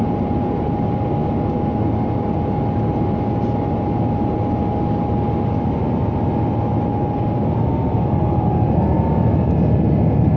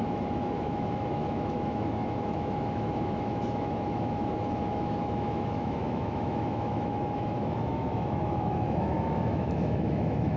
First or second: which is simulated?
second